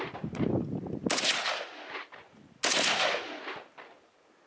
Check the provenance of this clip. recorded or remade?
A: recorded